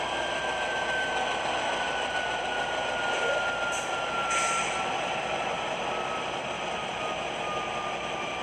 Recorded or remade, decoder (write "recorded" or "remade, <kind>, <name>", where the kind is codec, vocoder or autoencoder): recorded